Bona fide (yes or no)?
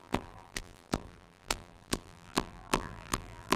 no